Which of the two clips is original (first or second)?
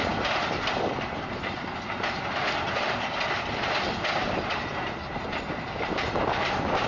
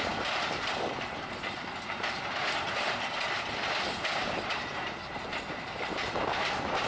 first